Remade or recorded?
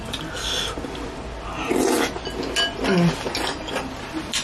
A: recorded